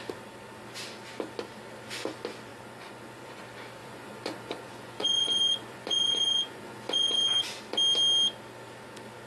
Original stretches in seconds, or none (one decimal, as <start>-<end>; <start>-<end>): 0.0-2.5; 3.4-3.8; 7.4-9.3